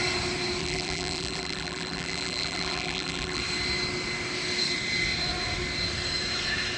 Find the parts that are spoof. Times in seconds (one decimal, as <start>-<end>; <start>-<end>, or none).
0.6-3.4